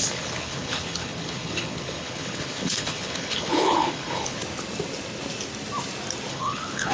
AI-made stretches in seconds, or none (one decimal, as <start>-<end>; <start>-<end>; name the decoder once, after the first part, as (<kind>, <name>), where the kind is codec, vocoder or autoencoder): 0.0-4.4 (codec, HILCodec); 6.3-6.9

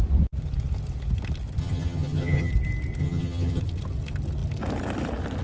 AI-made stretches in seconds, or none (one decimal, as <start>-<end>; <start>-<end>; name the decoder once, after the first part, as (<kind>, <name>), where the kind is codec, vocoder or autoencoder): 1.6-2.5 (vocoder, HiFi-GAN); 3.0-3.6

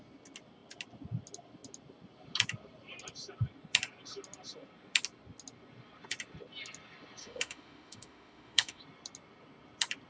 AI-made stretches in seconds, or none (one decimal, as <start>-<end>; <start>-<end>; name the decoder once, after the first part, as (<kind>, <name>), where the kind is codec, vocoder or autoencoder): 7.2-8.8 (autoencoder, DAC-VAE)

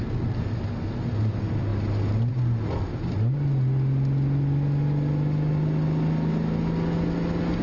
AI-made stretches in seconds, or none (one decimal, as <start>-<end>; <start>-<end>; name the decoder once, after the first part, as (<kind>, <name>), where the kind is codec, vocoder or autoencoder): none

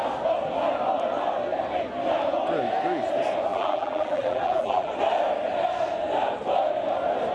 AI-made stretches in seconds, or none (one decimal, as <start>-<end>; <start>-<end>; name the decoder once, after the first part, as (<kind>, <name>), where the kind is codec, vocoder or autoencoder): 3.5-4.9 (vocoder, BigVGAN v2)